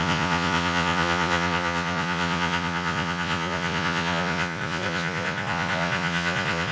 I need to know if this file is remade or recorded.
remade